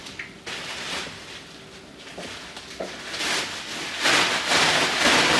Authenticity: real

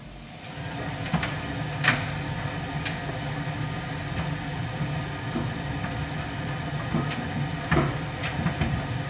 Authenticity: real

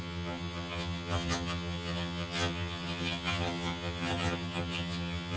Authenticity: fake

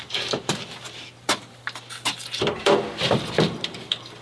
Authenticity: fake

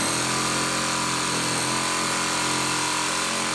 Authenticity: real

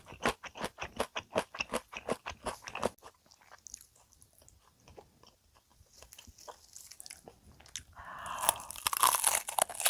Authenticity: real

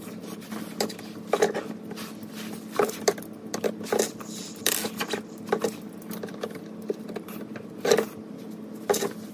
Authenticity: real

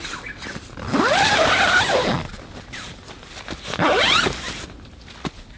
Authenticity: real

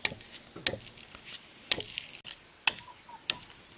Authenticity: real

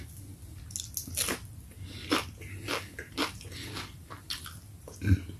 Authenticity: real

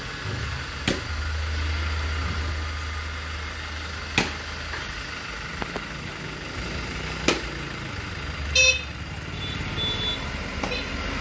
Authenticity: real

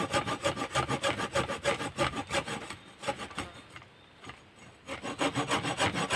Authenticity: real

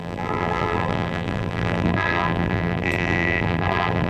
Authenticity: fake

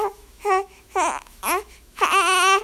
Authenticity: fake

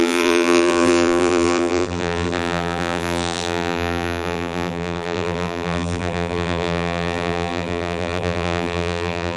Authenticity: fake